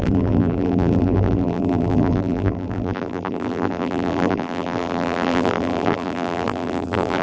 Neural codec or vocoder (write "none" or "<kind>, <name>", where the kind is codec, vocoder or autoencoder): vocoder, BigVGAN v2